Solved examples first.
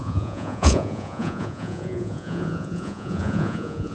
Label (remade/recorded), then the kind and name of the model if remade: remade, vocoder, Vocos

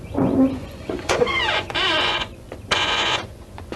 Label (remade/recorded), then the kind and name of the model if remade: remade, vocoder, Vocos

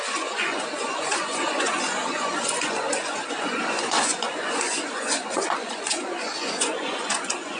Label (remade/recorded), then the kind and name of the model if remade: remade, vocoder, Vocos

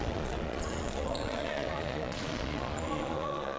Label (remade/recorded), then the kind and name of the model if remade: remade, vocoder, Vocos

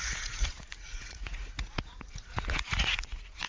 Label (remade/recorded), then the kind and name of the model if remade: remade, vocoder, Vocos